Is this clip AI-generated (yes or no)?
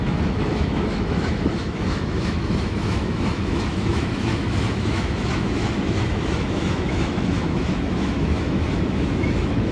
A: yes